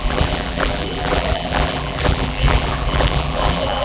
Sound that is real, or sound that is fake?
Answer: fake